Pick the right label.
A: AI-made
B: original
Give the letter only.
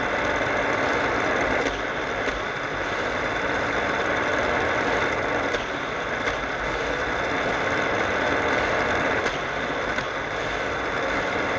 B